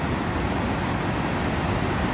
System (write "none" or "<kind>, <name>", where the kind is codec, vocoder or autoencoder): none